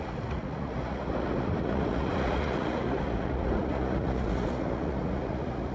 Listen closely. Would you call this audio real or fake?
fake